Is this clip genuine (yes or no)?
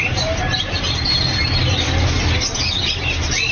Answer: yes